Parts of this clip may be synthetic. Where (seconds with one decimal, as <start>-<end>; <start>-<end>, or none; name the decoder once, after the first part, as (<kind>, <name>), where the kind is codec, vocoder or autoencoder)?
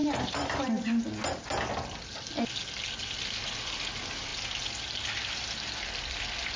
none